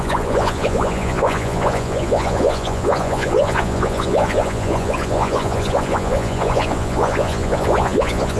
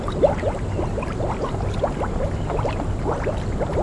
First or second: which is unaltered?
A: second